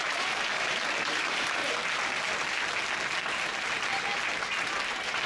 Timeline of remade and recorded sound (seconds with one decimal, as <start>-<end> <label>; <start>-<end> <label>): 0.0-1.6 remade; 1.6-3.2 recorded; 3.2-3.9 remade; 3.9-4.8 recorded; 4.8-5.3 remade